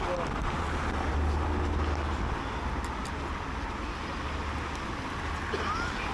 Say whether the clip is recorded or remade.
recorded